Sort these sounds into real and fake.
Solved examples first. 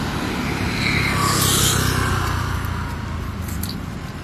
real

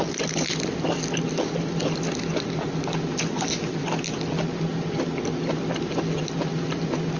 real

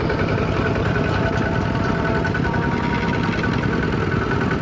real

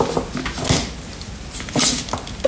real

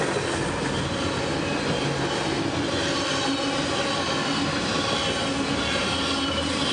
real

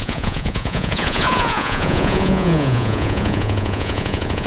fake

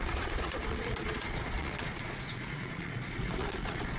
fake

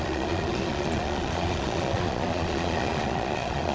fake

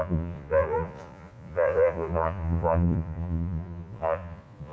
fake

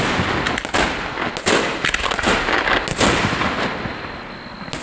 real